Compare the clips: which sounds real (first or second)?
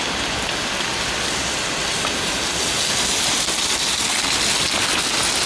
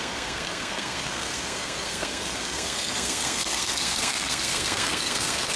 first